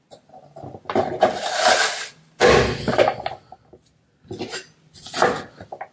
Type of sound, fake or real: real